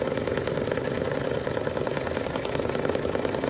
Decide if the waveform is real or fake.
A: real